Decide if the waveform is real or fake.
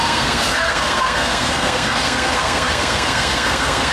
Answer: fake